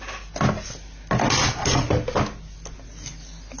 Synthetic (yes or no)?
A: no